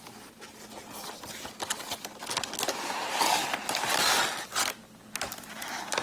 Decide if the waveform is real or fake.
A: real